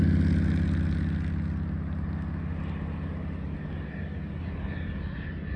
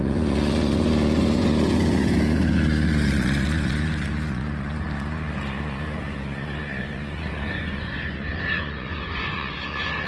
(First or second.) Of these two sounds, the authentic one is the first